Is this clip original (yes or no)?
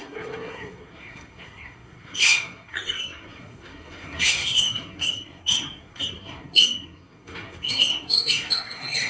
no